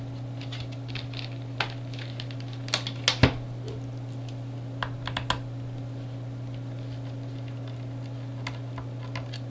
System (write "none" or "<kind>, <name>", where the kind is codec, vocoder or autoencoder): none